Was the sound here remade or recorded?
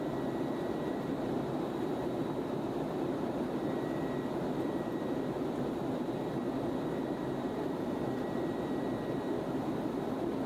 remade